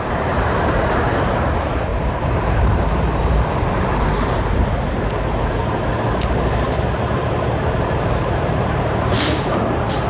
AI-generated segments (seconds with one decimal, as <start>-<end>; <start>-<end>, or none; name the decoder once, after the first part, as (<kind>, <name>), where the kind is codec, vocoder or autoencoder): 0.0-5.6 (vocoder, BigVGAN v2); 6.3-10.1